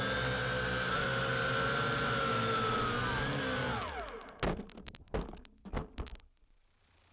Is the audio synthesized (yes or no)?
no